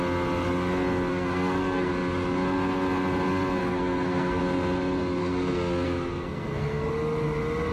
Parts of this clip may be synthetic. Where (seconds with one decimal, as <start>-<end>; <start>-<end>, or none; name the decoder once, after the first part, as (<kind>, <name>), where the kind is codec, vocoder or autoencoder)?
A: 1.1-1.9 (codec, SNAC); 3.6-4.4; 5.2-6.9